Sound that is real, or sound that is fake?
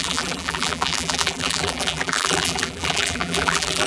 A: fake